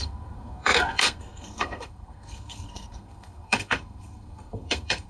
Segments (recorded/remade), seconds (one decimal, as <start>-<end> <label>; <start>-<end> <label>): 0.0-5.1 remade